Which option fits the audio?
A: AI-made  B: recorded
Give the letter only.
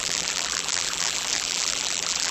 A